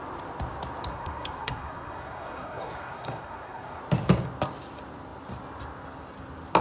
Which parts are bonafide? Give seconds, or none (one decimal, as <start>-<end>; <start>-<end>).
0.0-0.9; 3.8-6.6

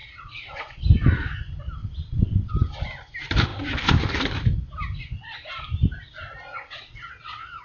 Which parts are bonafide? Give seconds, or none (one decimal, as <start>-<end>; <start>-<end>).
0.8-1.8; 2.5-6.5

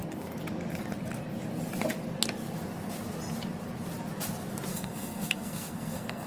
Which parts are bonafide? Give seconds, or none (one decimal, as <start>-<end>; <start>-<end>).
0.0-4.7

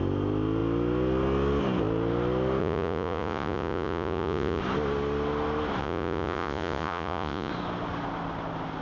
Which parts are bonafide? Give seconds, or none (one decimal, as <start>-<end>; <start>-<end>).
0.0-2.6; 4.6-5.8; 7.5-8.8

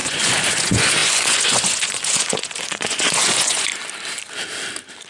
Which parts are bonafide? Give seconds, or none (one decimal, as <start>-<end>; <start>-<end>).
3.7-5.1